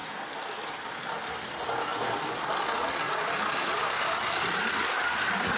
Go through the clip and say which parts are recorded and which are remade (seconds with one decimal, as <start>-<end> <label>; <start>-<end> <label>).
0.0-5.6 recorded